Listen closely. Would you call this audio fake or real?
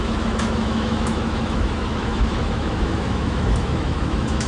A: fake